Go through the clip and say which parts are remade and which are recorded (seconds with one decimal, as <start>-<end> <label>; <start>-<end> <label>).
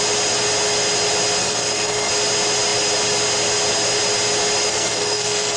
0.0-1.4 recorded; 1.4-2.1 remade; 2.1-4.7 recorded; 4.7-5.6 remade